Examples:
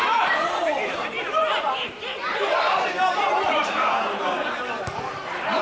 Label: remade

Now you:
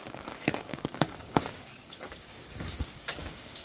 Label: remade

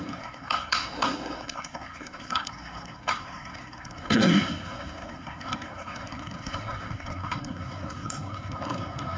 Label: remade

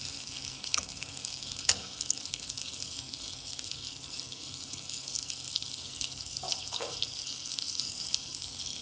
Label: remade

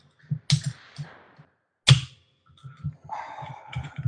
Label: recorded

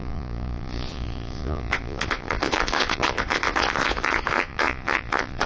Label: remade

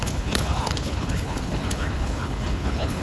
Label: remade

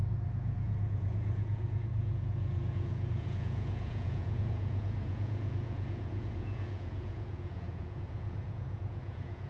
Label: remade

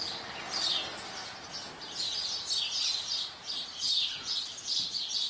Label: recorded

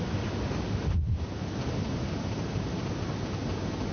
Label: recorded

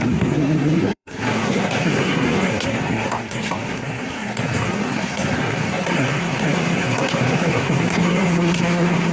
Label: remade